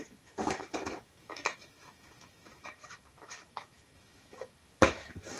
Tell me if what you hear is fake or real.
fake